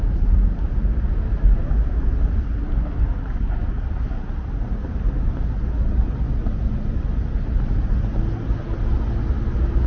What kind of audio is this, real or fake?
real